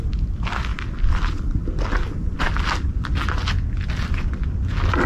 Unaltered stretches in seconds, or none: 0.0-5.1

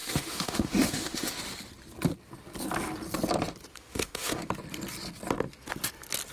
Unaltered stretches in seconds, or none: 1.4-3.7; 4.5-6.3

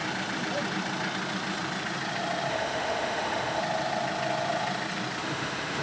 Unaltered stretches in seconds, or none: 0.0-2.5; 3.6-5.2

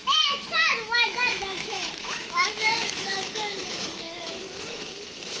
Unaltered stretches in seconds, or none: none

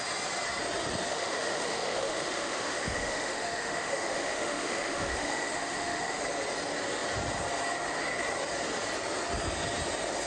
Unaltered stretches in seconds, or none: 0.0-1.1; 6.2-10.3

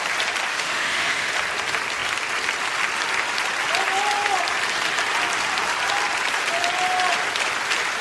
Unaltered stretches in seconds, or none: 0.0-0.5; 1.3-8.0

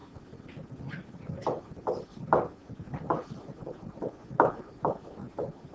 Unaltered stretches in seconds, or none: 0.0-5.7